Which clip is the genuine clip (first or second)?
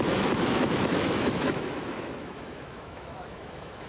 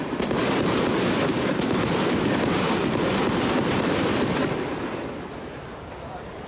second